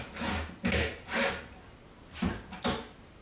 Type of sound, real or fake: real